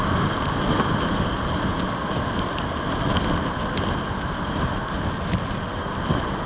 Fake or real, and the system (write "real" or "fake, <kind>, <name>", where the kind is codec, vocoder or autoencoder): real